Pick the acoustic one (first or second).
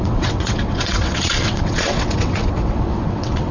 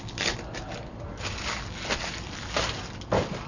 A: second